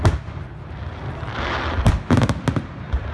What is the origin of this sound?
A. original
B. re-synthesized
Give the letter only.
A